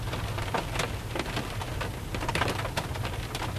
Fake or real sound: real